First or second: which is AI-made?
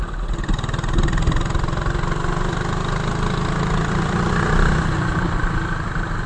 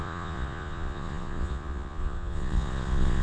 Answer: second